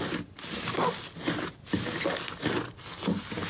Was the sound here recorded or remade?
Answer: recorded